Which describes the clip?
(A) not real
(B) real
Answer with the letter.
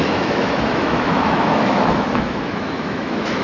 A